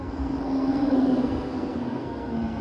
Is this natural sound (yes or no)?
no